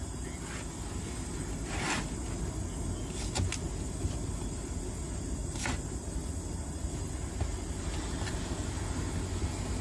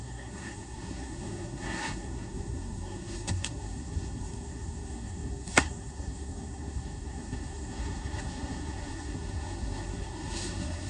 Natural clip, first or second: first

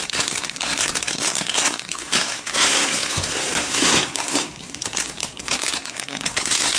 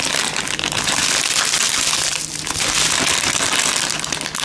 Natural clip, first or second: second